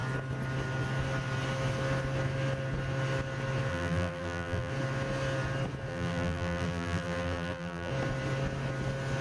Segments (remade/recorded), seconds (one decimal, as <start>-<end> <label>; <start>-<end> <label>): 0.0-3.7 recorded; 3.7-4.7 remade; 4.7-5.9 recorded; 5.9-7.9 remade; 7.9-9.2 recorded